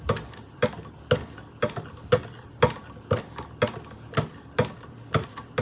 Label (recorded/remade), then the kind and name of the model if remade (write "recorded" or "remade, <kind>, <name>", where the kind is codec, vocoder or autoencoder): recorded